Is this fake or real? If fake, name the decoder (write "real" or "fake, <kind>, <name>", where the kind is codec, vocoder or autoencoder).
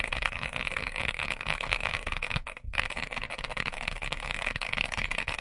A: fake, codec, SNAC